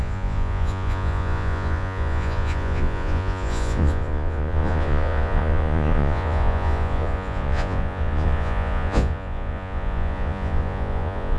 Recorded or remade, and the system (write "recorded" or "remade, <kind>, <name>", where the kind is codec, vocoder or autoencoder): remade, vocoder, Vocos